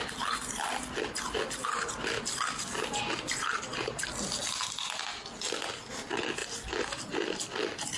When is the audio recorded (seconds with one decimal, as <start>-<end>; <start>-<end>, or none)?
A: 0.0-8.0